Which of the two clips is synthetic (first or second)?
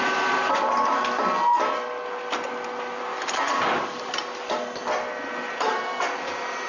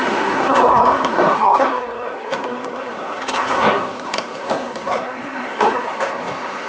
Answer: second